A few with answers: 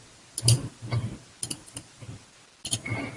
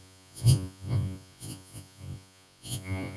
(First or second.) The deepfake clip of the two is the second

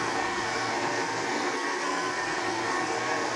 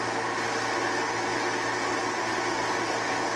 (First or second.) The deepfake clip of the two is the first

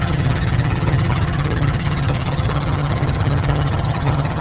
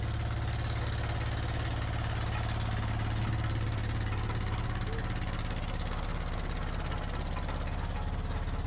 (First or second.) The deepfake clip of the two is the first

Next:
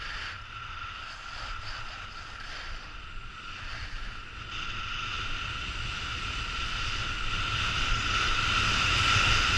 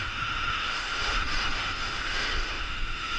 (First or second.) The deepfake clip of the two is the second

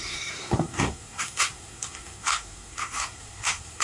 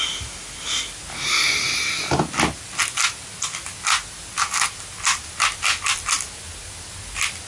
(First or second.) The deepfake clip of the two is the first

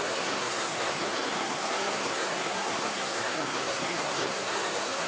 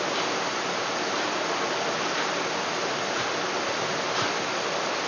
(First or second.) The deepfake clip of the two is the first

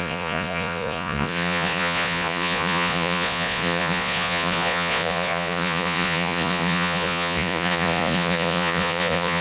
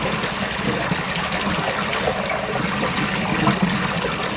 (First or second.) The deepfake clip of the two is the first